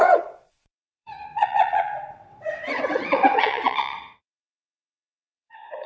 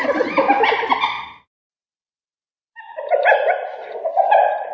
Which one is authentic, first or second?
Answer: second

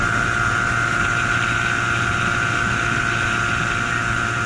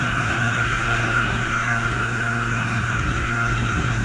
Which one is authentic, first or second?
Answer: first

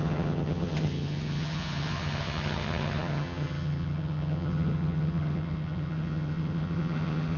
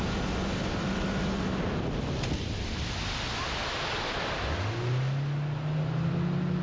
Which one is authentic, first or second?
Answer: second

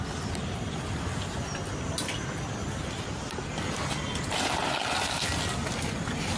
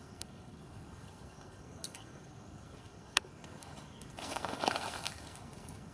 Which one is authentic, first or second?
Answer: first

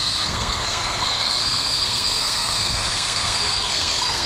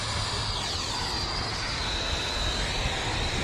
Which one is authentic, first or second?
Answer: second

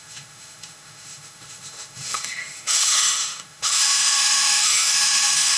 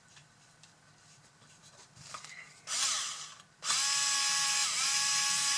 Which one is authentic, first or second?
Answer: second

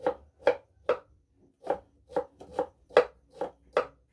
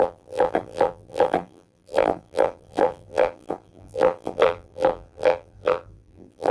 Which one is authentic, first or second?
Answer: first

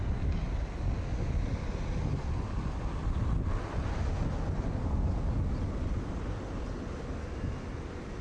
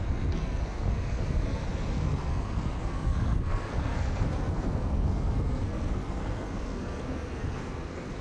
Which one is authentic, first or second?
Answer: first